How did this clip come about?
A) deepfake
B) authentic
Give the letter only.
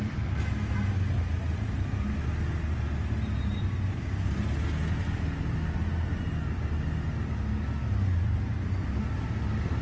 B